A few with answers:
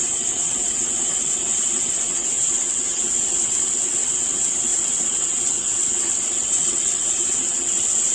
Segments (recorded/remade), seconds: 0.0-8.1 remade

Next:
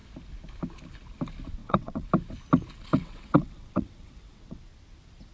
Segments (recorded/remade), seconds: 0.0-1.6 recorded; 1.6-2.1 remade; 2.1-2.9 recorded; 2.9-4.6 remade; 4.6-5.3 recorded

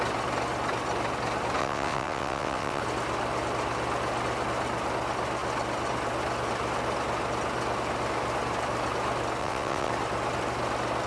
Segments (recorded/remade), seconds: 0.0-1.6 recorded; 1.6-2.8 remade; 2.8-9.4 recorded; 9.4-9.9 remade; 9.9-11.1 recorded

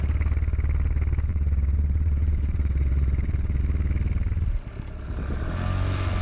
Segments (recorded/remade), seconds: 0.0-1.3 recorded; 1.3-3.6 remade; 3.6-6.2 recorded

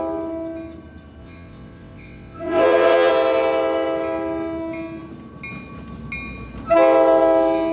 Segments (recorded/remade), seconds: 0.0-1.2 recorded; 1.2-3.1 remade; 3.1-7.7 recorded

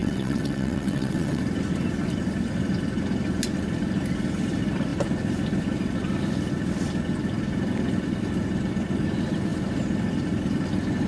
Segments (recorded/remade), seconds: 0.0-1.4 remade; 1.4-11.1 recorded

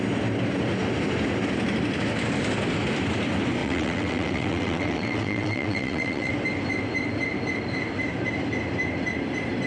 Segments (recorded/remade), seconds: 0.0-3.6 recorded; 3.6-6.3 remade; 6.3-9.7 recorded

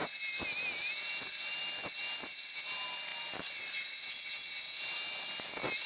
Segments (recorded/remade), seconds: 0.0-5.9 recorded